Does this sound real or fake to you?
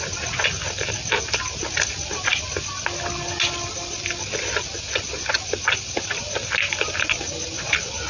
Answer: real